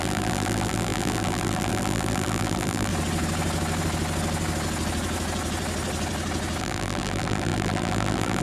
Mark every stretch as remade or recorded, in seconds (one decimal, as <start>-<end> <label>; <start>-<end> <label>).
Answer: 0.0-2.9 remade; 2.9-6.6 recorded; 6.6-8.4 remade